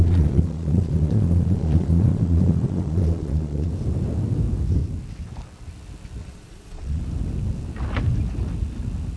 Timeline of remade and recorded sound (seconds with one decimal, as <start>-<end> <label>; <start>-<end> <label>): 0.0-3.7 remade; 3.7-6.2 recorded; 6.2-7.0 remade; 7.0-9.2 recorded